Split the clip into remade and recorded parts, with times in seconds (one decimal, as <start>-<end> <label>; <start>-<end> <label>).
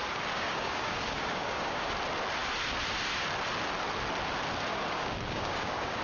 0.0-1.9 remade; 1.9-4.7 recorded; 4.7-6.0 remade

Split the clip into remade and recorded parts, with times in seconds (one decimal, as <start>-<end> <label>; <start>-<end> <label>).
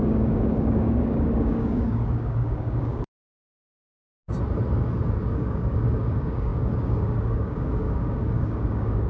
0.0-4.0 remade; 4.0-5.1 recorded; 5.1-9.1 remade